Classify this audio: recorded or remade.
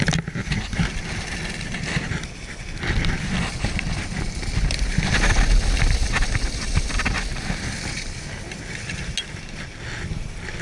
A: recorded